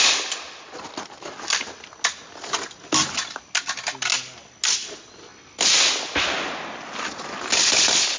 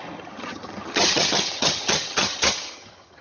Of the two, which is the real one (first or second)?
first